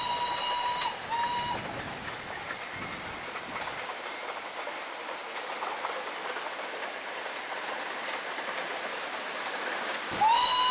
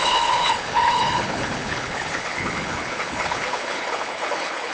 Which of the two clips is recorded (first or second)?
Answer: first